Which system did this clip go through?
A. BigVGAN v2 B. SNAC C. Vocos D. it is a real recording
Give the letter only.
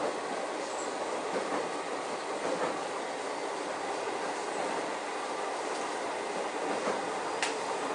D